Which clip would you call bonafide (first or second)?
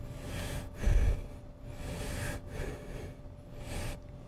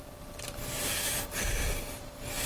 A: first